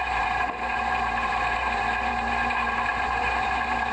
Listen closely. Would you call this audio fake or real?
fake